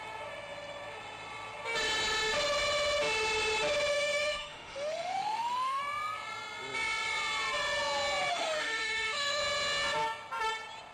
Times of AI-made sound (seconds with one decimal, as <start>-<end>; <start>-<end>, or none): 3.9-5.8; 8.3-9.4